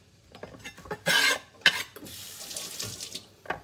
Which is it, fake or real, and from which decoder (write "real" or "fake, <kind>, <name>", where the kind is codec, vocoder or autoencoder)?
real